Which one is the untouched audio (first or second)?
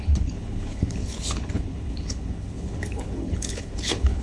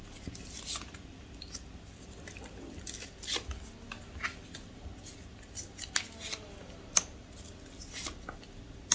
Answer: second